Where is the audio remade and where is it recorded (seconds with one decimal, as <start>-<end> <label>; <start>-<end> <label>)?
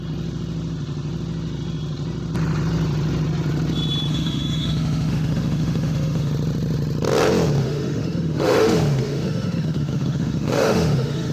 0.0-4.1 recorded; 4.1-6.3 remade; 6.3-7.6 recorded; 7.6-11.3 remade